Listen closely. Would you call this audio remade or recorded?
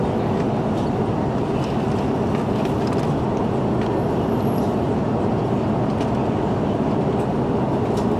recorded